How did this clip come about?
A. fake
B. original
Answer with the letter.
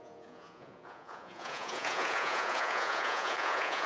A